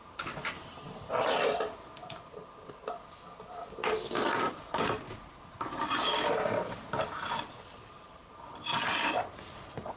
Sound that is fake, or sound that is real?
real